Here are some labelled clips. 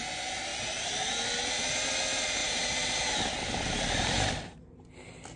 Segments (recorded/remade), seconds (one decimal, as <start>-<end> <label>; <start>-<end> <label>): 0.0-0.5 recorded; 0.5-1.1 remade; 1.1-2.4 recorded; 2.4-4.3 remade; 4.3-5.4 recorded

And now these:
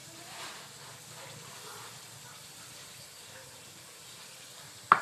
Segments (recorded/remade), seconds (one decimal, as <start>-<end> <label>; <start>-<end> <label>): 0.0-1.0 recorded; 1.0-5.0 remade

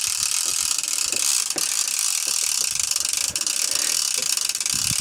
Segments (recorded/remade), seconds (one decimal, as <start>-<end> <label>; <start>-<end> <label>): 0.0-0.5 recorded; 0.5-3.5 remade; 3.5-4.2 recorded; 4.2-5.0 remade

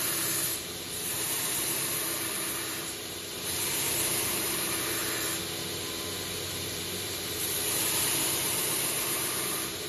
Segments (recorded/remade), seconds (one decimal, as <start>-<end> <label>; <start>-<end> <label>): 0.0-5.0 remade; 5.0-6.5 recorded; 6.5-9.9 remade

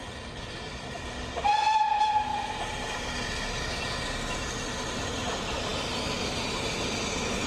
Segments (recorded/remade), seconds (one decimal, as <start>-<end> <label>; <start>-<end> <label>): 0.0-7.5 recorded

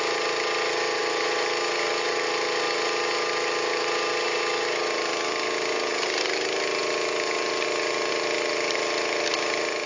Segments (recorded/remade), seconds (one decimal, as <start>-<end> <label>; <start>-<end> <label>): 0.0-9.9 recorded

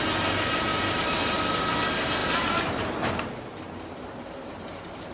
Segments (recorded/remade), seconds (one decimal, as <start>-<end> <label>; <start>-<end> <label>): 0.0-0.7 recorded; 0.7-1.2 remade; 1.2-2.2 recorded; 2.2-5.1 remade

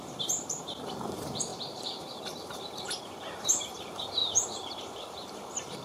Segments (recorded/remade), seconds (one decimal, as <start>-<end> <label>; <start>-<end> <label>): 0.0-5.8 remade